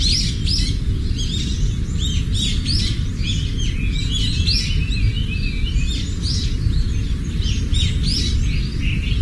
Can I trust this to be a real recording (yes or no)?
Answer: yes